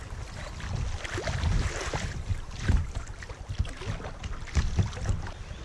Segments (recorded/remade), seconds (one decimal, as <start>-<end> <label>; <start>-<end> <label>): 0.0-5.6 recorded